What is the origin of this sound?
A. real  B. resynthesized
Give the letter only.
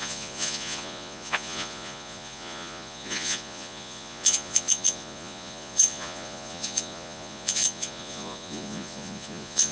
B